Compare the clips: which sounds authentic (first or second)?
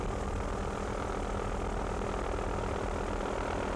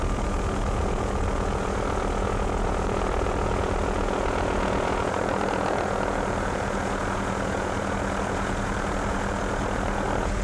first